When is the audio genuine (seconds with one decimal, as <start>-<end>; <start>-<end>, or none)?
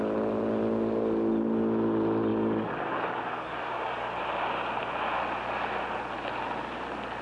0.0-2.3; 4.2-7.2